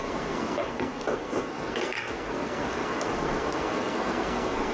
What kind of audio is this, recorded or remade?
remade